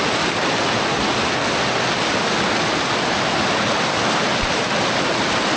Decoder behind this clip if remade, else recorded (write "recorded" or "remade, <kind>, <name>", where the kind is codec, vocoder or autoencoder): recorded